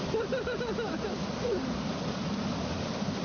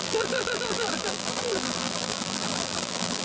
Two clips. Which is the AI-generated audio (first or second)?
second